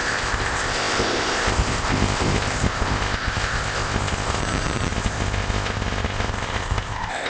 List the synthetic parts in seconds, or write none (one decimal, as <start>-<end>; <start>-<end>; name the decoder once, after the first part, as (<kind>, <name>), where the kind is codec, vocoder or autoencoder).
0.0-4.4 (codec, ZipCodec); 4.9-7.3